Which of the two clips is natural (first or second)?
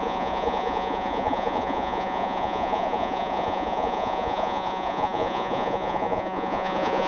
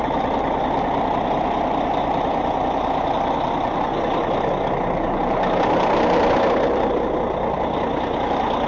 second